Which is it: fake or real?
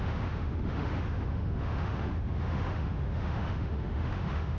fake